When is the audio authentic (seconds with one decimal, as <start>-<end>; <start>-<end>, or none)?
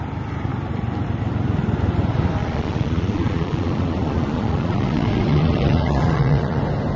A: 0.0-2.4; 6.6-7.0